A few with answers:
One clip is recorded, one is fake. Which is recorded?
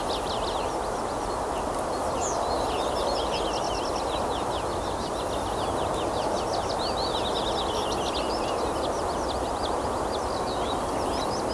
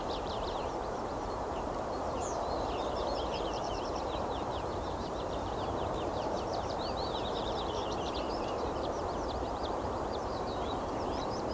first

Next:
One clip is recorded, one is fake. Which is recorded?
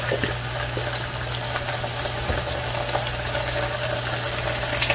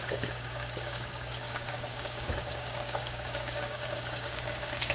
first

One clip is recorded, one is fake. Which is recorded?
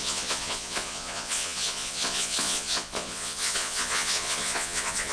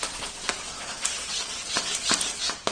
second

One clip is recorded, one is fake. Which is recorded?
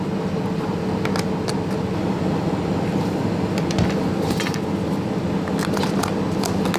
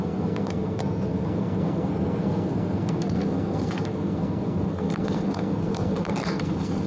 first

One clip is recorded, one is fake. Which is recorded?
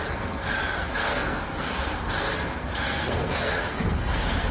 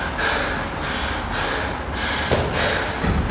second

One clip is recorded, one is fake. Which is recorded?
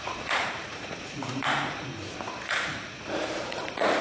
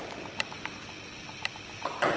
second